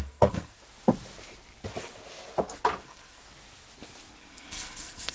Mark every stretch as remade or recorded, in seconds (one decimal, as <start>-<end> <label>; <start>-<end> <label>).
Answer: 0.0-0.6 remade; 0.6-2.8 recorded; 2.8-3.2 remade; 3.2-4.2 recorded; 4.2-5.1 remade